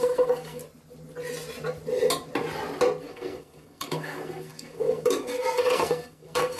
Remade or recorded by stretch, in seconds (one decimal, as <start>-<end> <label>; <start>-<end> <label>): 0.0-0.6 remade; 0.6-3.0 recorded; 3.0-6.6 remade